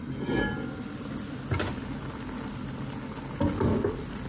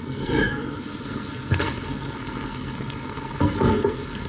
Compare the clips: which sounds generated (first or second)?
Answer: second